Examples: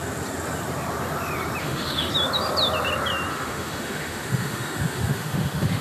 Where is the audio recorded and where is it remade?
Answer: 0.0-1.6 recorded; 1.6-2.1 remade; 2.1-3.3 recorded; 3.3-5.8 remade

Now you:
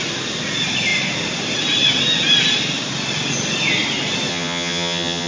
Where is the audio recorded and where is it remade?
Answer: 0.0-4.3 recorded; 4.3-5.3 remade

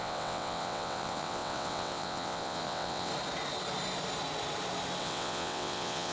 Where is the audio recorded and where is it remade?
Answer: 0.0-3.1 remade; 3.1-5.0 recorded; 5.0-6.1 remade